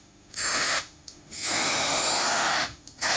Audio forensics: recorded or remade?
remade